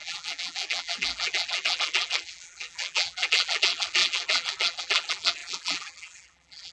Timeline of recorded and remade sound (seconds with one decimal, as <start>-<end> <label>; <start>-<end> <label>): 0.0-6.7 remade